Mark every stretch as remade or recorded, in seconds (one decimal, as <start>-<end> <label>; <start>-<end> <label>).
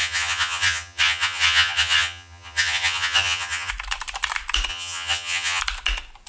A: 0.0-3.7 remade; 3.7-4.7 recorded; 4.7-5.6 remade; 5.6-6.3 recorded